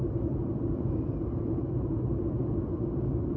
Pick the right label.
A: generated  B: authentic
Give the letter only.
B